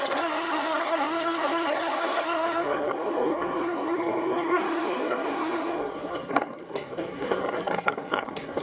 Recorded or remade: remade